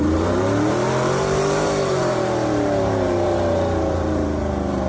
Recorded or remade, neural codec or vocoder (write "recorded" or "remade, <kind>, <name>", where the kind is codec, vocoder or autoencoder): remade, vocoder, BigVGAN v2